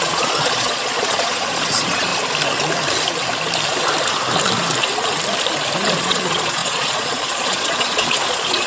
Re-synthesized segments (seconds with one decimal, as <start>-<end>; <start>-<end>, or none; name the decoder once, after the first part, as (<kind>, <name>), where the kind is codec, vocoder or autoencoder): 0.0-2.1 (vocoder, Vocos); 6.0-8.7

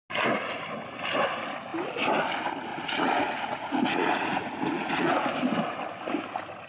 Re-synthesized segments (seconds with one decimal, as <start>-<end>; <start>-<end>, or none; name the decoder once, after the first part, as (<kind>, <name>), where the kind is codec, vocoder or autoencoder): 2.7-5.3 (vocoder, Vocos)

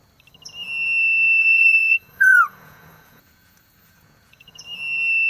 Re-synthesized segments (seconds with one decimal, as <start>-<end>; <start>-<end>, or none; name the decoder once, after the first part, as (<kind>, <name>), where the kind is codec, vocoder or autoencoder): 1.4-4.6 (vocoder, Vocos)

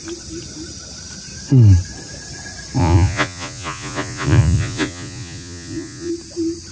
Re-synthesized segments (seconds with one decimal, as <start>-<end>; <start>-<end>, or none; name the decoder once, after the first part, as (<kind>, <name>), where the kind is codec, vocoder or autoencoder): 2.8-6.1 (vocoder, Vocos)

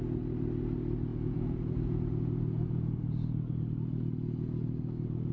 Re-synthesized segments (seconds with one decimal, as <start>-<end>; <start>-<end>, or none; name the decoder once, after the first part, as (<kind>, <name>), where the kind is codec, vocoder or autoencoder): 1.1-3.5 (vocoder, Vocos)

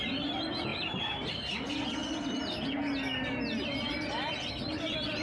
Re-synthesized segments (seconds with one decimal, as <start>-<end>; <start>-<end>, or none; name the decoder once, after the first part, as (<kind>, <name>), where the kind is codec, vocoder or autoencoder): none